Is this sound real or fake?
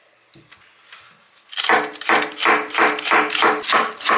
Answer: real